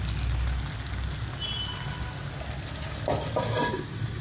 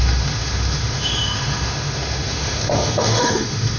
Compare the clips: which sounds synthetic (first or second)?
second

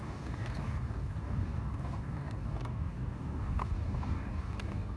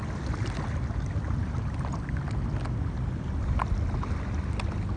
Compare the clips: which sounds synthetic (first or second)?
first